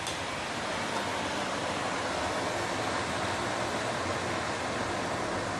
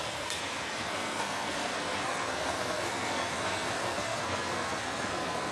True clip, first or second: first